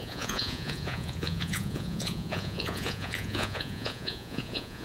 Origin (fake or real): fake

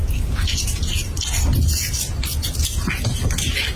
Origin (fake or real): real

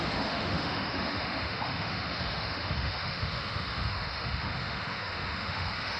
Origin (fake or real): fake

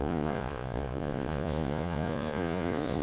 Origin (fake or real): fake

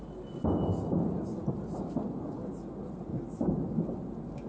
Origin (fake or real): real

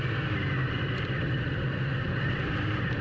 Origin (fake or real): real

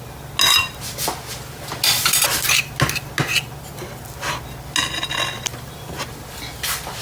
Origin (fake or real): real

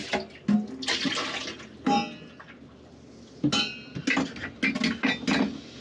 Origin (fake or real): real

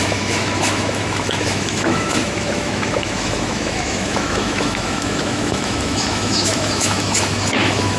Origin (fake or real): fake